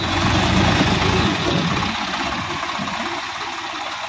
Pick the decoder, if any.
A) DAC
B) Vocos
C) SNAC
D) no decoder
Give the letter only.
B